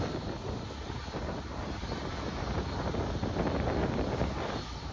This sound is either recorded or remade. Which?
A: recorded